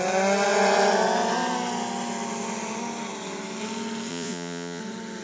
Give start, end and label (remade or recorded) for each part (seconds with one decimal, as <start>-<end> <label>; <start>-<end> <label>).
0.0-4.1 recorded; 4.1-4.8 remade; 4.8-5.2 recorded